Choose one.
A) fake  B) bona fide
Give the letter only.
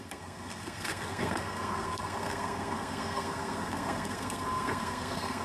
A